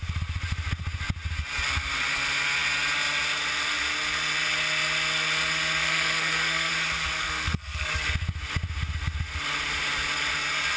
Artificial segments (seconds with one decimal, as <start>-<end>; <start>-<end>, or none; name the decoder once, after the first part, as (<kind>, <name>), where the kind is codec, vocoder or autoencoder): 5.8-6.7 (codec, SNAC); 7.2-7.9